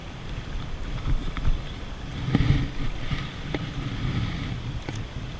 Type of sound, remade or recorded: recorded